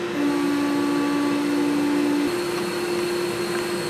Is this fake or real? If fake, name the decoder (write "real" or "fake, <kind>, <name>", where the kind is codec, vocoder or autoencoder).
real